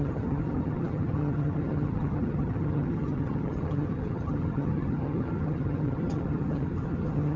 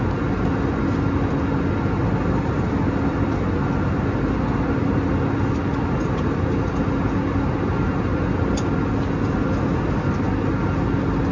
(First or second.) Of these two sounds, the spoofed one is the first